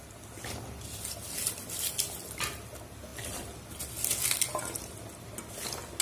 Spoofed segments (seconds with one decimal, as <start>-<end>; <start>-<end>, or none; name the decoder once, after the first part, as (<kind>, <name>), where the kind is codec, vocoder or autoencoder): none